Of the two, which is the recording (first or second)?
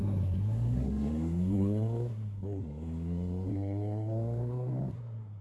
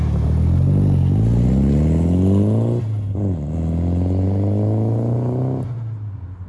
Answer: second